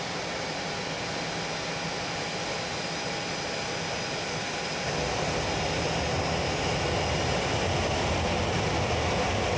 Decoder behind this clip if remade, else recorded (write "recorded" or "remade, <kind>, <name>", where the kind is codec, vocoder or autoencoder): recorded